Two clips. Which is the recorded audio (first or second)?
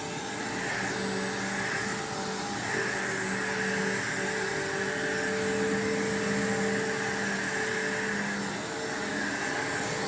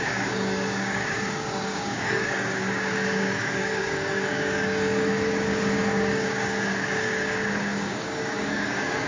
first